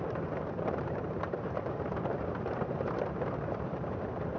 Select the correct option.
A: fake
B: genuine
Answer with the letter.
A